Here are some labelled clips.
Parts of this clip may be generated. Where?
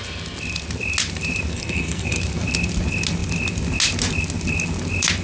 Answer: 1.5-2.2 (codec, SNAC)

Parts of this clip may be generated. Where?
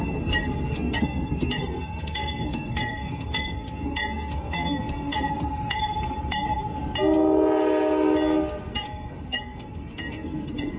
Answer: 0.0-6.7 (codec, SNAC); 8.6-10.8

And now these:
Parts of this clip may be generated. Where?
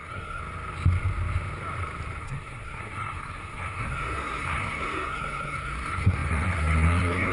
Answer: 0.0-0.4 (codec, SNAC); 2.2-7.3